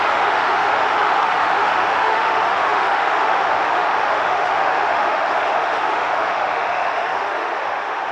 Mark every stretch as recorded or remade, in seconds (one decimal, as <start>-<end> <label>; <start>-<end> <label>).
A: 0.0-8.1 remade